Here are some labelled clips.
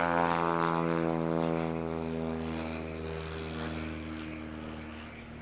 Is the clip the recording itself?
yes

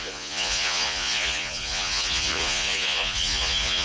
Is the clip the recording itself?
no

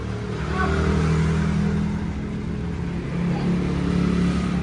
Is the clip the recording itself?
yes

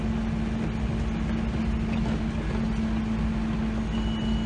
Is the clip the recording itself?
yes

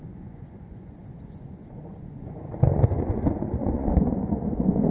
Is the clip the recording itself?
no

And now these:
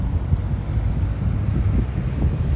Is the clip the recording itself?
yes